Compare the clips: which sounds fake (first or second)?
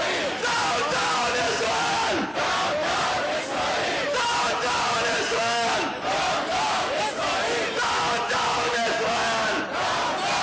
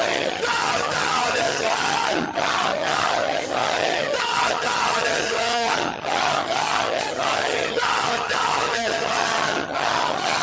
second